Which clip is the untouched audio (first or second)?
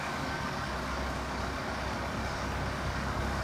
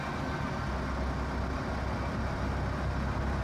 second